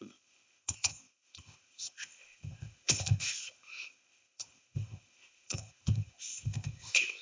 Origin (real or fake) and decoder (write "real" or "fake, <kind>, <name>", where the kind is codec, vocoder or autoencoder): fake, codec, ZipCodec